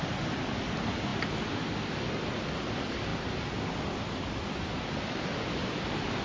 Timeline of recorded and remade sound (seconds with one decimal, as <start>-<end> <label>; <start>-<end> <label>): 0.0-6.2 recorded